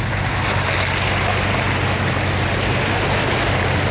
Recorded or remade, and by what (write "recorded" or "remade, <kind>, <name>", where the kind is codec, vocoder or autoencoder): recorded